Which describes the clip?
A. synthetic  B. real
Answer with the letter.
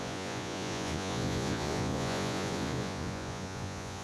A